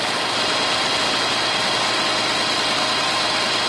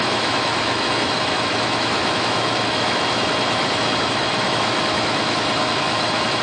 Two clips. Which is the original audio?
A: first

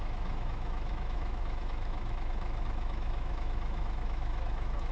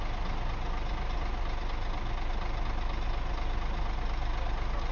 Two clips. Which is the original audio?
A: second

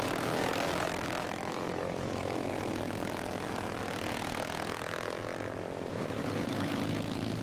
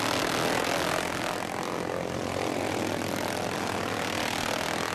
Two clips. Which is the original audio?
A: second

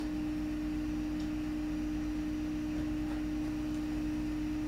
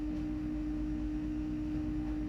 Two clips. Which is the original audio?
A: first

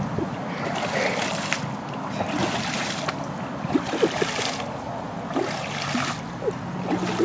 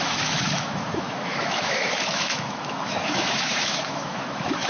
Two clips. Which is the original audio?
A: first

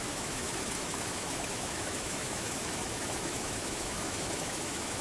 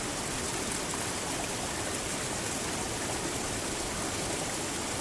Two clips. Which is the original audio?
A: second